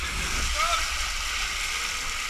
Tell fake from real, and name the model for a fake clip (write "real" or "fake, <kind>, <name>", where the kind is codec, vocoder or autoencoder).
real